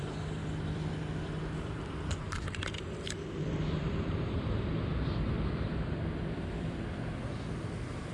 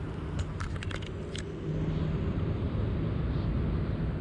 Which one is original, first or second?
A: second